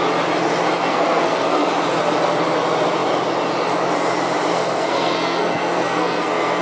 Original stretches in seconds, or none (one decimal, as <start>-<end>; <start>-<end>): 0.0-0.9; 1.7-4.5